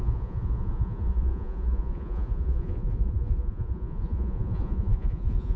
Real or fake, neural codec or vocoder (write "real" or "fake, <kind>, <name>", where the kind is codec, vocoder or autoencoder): fake, vocoder, Vocos